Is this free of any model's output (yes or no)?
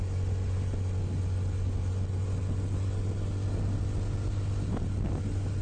yes